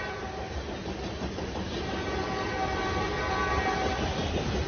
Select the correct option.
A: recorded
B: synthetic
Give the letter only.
A